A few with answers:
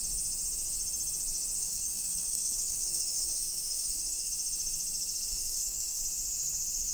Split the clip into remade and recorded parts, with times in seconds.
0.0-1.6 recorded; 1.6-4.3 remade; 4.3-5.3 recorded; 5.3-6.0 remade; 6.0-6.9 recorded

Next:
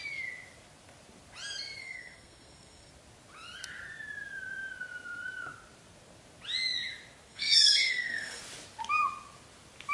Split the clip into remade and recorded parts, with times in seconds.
0.0-1.8 recorded; 1.8-2.9 remade; 2.9-7.3 recorded; 7.3-8.4 remade; 8.4-9.9 recorded

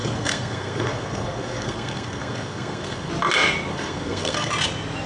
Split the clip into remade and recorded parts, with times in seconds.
0.0-3.1 remade; 3.1-3.7 recorded; 3.7-4.5 remade; 4.5-5.1 recorded

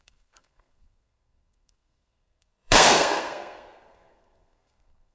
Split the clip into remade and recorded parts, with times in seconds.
0.0-5.1 remade

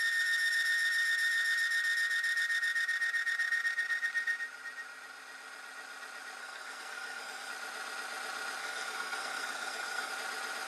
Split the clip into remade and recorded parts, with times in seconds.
0.0-6.4 recorded; 6.4-7.5 remade; 7.5-8.6 recorded; 8.6-10.1 remade; 10.1-10.7 recorded

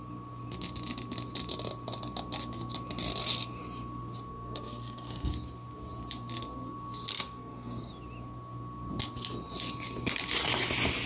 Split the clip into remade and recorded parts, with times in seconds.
0.0-4.3 recorded; 4.3-5.3 remade; 5.3-7.1 recorded; 7.1-7.9 remade; 7.9-11.1 recorded

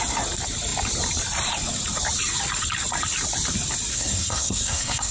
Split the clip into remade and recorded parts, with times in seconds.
0.0-3.9 recorded; 3.9-5.1 remade

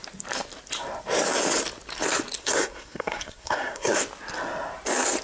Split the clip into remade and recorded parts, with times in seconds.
0.0-2.4 recorded; 2.4-4.0 remade; 4.0-5.2 recorded